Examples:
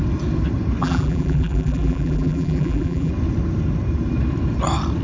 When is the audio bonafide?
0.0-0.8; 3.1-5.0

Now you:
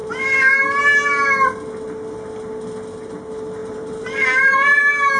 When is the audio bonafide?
0.0-3.6; 4.8-5.2

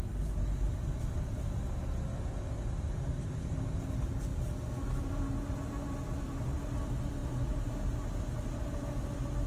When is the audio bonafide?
0.0-7.2; 7.7-9.5